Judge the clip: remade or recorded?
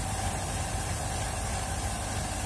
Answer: recorded